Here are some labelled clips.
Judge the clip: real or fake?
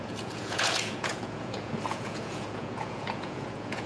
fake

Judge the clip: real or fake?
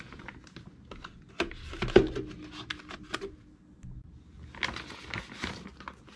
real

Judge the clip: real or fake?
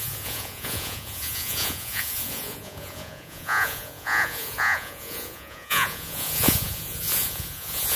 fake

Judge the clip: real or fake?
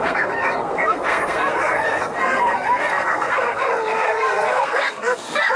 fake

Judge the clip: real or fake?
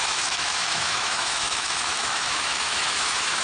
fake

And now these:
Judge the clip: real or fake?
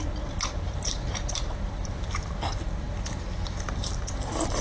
fake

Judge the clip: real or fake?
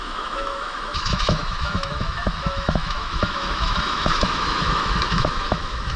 fake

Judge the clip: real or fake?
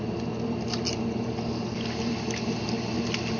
real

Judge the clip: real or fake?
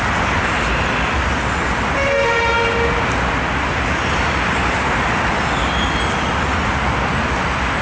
real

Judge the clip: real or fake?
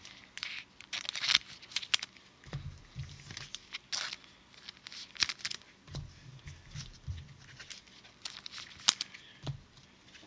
real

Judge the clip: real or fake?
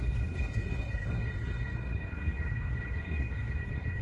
fake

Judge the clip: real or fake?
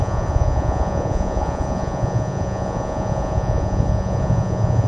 fake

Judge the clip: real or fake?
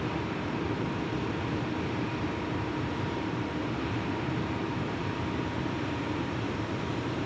fake